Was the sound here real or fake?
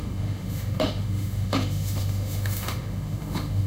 fake